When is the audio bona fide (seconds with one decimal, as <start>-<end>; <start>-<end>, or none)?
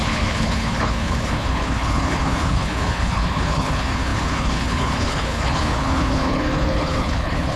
none